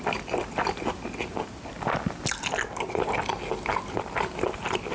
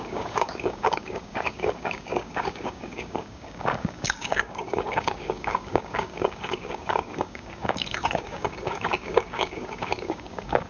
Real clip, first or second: first